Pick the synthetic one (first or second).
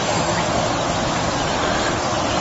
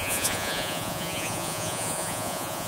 second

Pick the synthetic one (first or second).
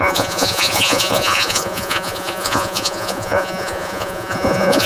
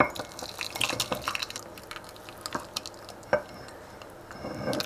first